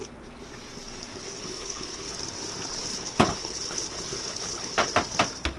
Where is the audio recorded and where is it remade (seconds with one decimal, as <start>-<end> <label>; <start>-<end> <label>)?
0.0-1.4 recorded; 1.4-2.1 remade; 2.1-2.9 recorded; 2.9-4.9 remade; 4.9-5.6 recorded